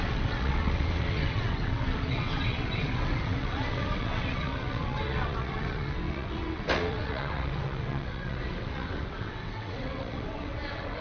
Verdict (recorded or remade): remade